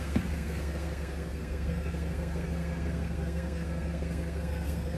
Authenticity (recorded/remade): remade